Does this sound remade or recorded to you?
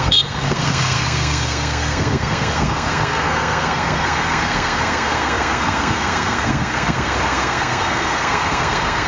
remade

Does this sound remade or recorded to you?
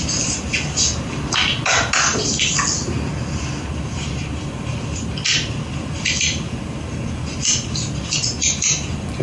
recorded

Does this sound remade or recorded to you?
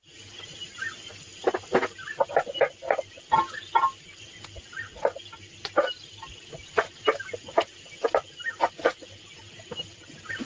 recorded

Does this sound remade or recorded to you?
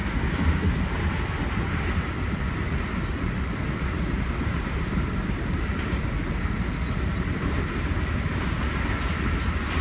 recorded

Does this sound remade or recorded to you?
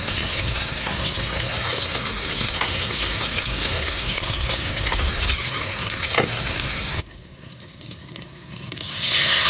remade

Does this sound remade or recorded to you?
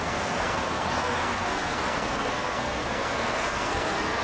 remade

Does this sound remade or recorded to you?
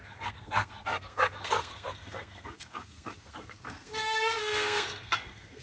remade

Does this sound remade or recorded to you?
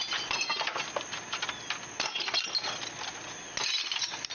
recorded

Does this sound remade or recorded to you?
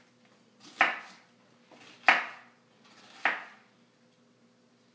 recorded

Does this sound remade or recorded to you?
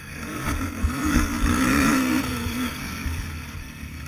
remade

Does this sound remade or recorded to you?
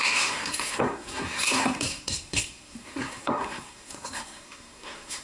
remade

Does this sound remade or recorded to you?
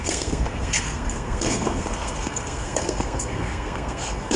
remade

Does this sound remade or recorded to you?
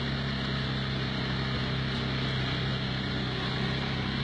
recorded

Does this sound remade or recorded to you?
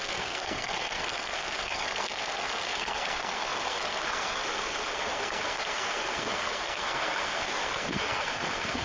remade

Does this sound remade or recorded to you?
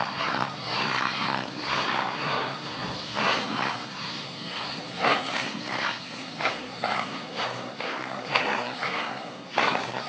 remade